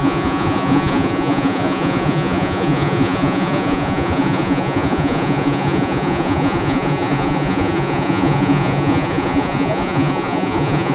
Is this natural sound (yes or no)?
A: no